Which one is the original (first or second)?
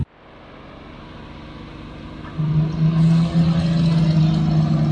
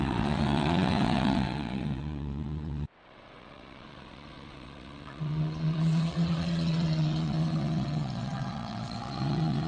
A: first